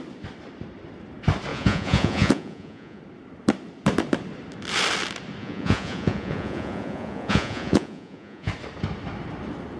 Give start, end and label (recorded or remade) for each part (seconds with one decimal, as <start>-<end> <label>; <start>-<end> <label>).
0.0-1.5 recorded; 1.5-3.0 remade; 3.0-5.4 recorded; 5.4-8.5 remade; 8.5-9.8 recorded